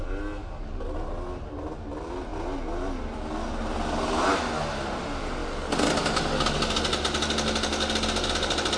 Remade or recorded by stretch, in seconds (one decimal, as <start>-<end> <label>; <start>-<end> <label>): 0.0-8.8 recorded